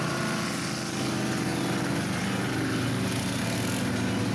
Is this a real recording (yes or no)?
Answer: yes